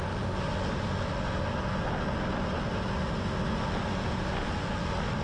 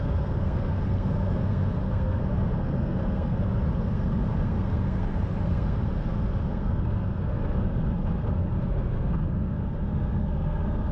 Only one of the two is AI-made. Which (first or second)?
second